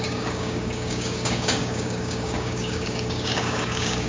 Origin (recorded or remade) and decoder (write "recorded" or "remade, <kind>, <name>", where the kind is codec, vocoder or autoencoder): remade, codec, DAC